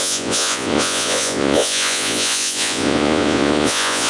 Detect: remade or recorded remade